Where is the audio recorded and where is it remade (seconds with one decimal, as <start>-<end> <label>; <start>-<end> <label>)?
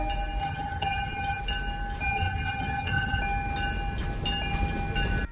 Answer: 0.0-0.4 recorded; 0.4-1.4 remade; 1.4-2.0 recorded; 2.0-3.2 remade; 3.2-5.3 recorded